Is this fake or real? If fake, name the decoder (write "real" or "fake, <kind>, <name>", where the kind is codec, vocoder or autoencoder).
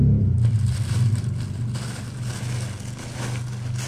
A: real